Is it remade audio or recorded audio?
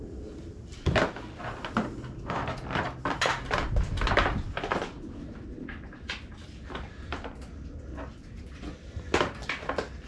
recorded